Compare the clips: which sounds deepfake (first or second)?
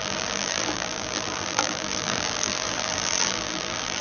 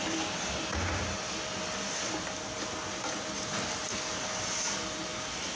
first